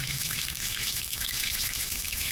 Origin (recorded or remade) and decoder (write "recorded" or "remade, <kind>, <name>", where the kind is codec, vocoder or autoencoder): remade, autoencoder, DAC-VAE